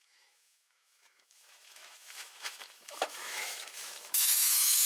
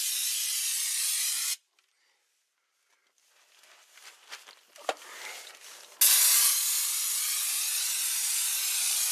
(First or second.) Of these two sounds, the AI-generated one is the first